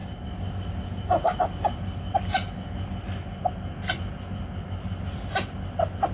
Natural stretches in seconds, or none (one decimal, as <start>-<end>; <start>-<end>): 0.0-6.1